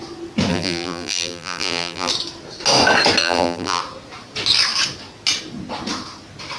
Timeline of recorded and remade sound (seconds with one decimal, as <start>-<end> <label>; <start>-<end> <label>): 0.0-0.5 recorded; 0.5-2.1 remade; 2.1-3.2 recorded; 3.2-3.8 remade; 3.8-6.6 recorded